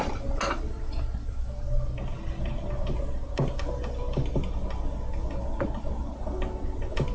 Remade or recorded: recorded